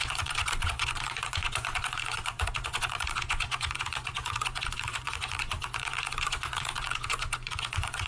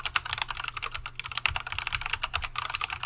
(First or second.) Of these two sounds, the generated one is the first